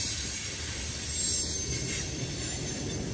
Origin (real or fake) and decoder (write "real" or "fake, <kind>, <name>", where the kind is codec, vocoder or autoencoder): real